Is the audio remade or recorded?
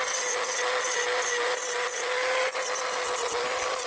recorded